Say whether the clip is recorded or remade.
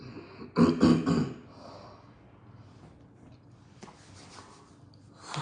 recorded